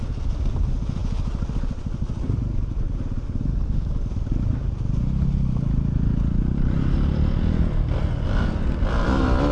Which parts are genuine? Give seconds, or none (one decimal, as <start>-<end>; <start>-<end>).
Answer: 0.0-9.5